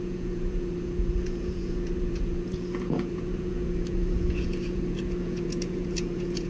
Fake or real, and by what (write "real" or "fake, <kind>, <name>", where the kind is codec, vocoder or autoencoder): fake, vocoder, Vocos